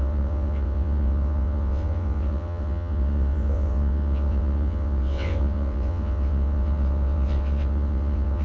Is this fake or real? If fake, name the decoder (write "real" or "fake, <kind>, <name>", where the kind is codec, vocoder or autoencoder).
fake, vocoder, WaveNeXt